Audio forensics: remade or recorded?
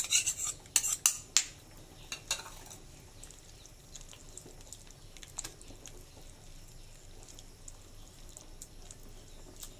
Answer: recorded